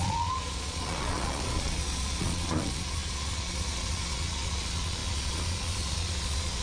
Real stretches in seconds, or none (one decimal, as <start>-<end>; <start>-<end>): none